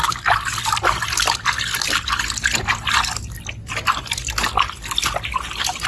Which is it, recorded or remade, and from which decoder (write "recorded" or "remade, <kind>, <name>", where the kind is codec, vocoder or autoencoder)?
recorded